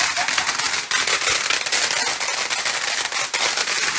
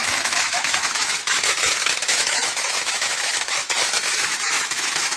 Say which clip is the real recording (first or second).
first